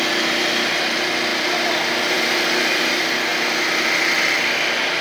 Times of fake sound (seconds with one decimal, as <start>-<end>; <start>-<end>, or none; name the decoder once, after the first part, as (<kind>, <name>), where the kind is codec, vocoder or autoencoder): 1.3-2.9 (vocoder, BigVGAN v2); 3.3-4.3